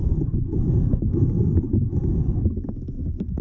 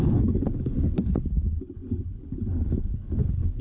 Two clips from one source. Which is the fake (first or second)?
second